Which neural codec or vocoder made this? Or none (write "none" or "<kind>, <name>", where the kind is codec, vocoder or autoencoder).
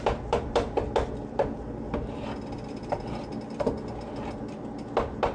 none